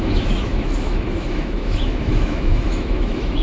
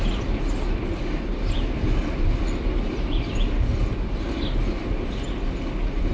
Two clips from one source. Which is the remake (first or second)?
first